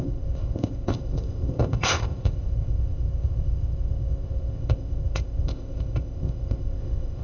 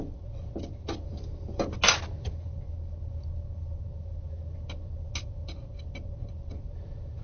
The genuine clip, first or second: second